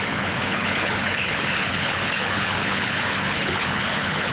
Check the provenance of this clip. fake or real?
fake